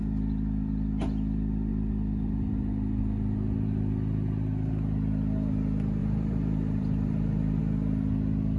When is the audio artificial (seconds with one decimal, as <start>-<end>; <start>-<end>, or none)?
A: 6.0-7.6